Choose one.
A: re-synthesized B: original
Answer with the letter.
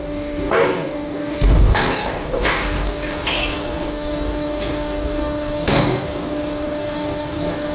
A